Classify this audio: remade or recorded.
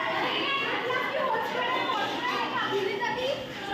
recorded